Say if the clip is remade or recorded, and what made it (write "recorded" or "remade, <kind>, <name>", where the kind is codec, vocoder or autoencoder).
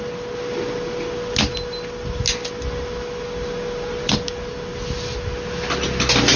recorded